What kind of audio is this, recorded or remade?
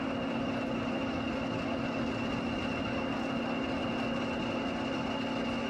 recorded